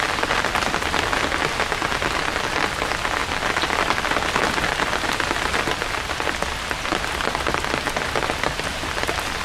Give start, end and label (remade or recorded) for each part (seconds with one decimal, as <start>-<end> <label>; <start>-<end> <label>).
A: 0.0-9.4 recorded